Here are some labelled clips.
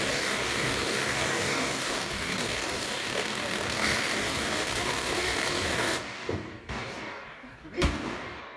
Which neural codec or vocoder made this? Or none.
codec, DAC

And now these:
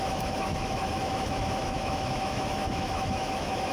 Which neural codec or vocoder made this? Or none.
autoencoder, DAC-VAE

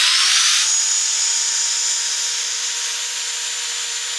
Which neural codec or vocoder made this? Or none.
none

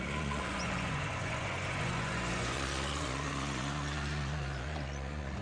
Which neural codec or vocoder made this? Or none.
vocoder, Vocos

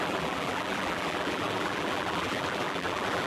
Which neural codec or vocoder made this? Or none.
vocoder, BigVGAN v2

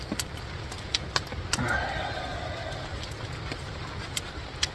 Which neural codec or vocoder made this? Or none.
none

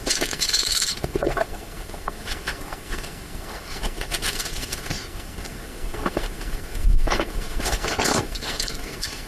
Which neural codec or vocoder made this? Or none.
codec, SNAC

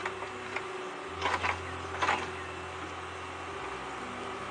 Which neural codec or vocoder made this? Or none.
none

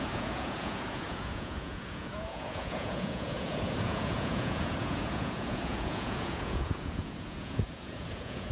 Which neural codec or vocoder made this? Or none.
vocoder, Vocos